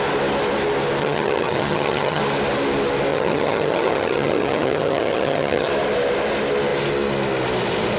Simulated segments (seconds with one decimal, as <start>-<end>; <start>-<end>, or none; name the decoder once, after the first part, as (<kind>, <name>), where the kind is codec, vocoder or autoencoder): 1.0-2.2 (vocoder, HiFi-GAN); 3.1-5.7